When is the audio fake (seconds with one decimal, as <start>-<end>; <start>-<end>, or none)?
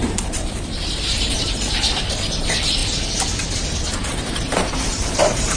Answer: 0.0-2.8; 3.5-5.6